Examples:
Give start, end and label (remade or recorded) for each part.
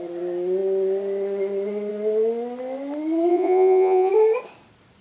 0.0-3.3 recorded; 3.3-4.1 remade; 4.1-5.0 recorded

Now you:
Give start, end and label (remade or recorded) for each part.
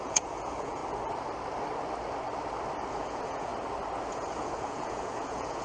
0.0-0.8 remade; 0.8-2.9 recorded; 2.9-3.5 remade; 3.5-4.1 recorded; 4.1-5.6 remade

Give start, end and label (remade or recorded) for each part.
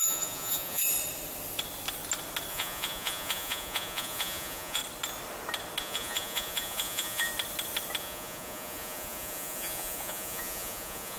0.0-0.8 remade; 0.8-2.5 recorded; 2.5-4.8 remade; 4.8-5.8 recorded; 5.8-7.3 remade; 7.3-8.0 recorded; 8.0-11.2 remade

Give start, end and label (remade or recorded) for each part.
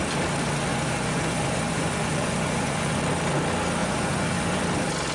0.0-0.7 recorded; 0.7-3.0 remade; 3.0-3.8 recorded; 3.8-4.6 remade; 4.6-5.1 recorded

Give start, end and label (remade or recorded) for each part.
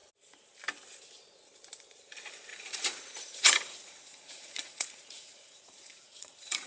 0.0-2.5 recorded; 2.5-6.7 remade